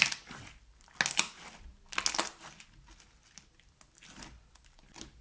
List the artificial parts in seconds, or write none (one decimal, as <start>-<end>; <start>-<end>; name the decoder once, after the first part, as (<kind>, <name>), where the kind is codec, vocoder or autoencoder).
none